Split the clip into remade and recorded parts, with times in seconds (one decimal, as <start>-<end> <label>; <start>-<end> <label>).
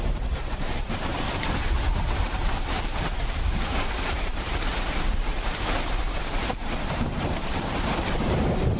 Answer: 0.0-5.3 remade; 5.3-6.5 recorded; 6.5-8.8 remade